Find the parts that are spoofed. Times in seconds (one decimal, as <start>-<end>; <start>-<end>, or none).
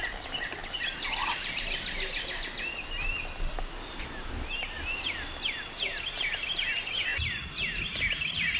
none